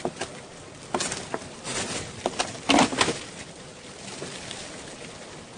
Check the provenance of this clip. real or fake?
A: real